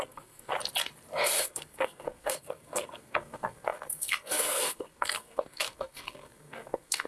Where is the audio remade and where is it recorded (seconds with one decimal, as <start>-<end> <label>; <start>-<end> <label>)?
0.0-0.5 remade; 0.5-1.4 recorded; 1.4-7.1 remade